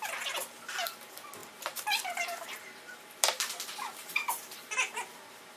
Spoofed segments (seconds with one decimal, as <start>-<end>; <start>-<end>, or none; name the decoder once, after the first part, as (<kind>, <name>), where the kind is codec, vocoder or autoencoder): 1.4-4.7 (vocoder, BigVGAN v2)